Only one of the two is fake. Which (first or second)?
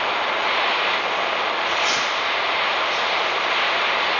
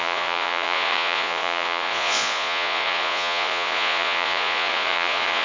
second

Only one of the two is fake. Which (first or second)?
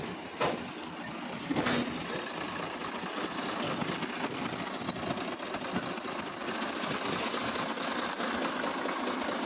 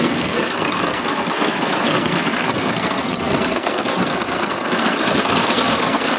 second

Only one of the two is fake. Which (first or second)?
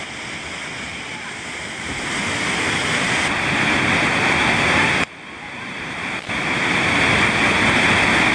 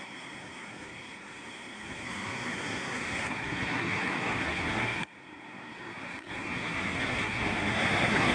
second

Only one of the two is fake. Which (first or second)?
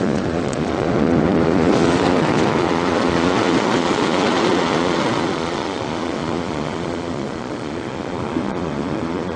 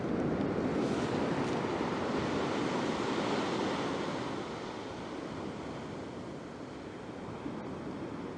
first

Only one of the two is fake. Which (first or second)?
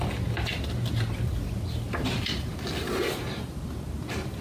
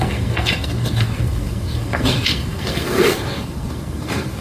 second